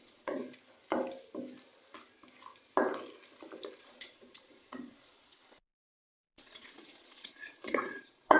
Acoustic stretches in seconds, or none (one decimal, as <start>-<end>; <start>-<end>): 0.4-3.8